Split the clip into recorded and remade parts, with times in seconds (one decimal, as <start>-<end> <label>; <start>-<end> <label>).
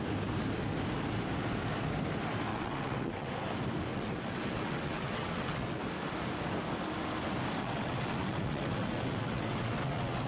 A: 0.0-2.5 recorded; 2.5-3.3 remade; 3.3-3.9 recorded; 3.9-5.8 remade; 5.8-7.6 recorded; 7.6-10.3 remade